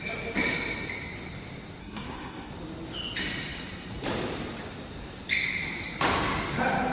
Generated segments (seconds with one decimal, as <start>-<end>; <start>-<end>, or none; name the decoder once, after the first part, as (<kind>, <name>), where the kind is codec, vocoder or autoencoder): 1.8-2.5 (codec, SNAC)